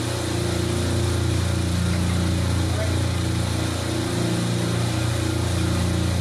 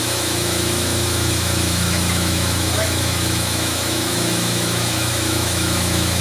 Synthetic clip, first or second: second